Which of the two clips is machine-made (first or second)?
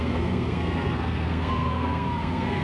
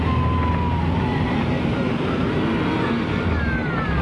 first